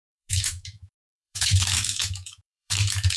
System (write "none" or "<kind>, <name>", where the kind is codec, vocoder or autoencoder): autoencoder, DAC-VAE